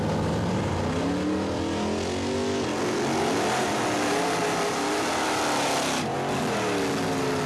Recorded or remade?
recorded